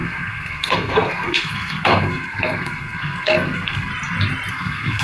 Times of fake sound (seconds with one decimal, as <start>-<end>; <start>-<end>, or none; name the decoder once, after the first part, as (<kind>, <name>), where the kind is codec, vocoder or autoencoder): 0.0-3.9 (codec, SNAC); 4.5-5.0